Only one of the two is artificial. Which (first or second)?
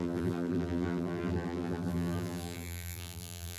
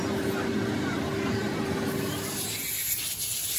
first